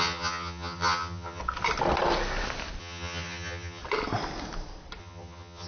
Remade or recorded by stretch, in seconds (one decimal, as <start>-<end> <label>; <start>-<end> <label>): 0.0-1.4 remade; 1.4-2.8 recorded; 2.8-3.8 remade; 3.8-5.0 recorded; 5.0-5.7 remade